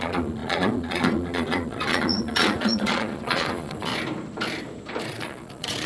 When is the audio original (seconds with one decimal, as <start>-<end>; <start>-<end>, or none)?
3.9-5.0